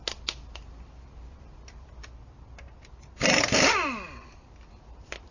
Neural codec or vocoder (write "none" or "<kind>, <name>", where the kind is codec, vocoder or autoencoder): none